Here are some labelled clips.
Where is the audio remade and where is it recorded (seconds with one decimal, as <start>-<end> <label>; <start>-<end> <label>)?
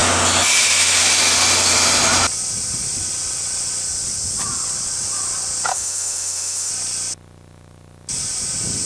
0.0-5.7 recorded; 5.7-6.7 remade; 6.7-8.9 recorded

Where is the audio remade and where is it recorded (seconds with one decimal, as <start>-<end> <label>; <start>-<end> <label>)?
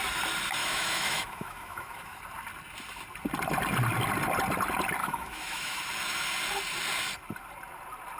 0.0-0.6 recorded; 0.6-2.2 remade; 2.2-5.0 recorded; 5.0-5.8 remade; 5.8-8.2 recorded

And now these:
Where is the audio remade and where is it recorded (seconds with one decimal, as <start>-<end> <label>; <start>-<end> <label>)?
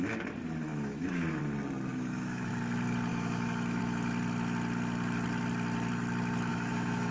0.0-0.7 recorded; 0.7-1.4 remade; 1.4-1.9 recorded; 1.9-2.5 remade; 2.5-3.1 recorded; 3.1-3.8 remade; 3.8-6.5 recorded; 6.5-7.1 remade